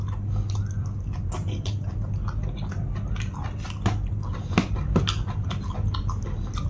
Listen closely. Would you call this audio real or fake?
real